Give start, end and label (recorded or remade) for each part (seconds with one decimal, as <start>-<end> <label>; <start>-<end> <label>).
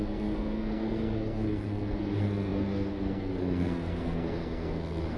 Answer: 0.0-5.2 remade